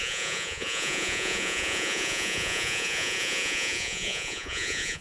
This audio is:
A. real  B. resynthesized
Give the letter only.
B